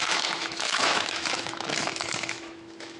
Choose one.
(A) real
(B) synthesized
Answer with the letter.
B